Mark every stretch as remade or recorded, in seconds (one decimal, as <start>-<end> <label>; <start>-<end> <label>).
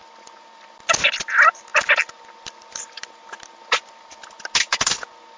0.0-5.4 recorded